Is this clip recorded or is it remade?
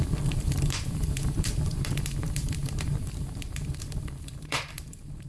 remade